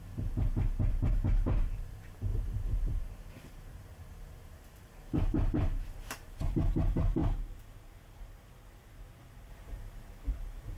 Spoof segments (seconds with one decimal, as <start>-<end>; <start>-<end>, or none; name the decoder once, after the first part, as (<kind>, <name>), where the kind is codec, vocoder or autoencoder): 0.0-2.3 (vocoder, BigVGAN v2); 3.0-7.2; 9.5-10.8